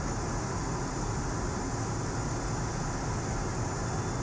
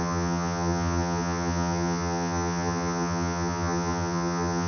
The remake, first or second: second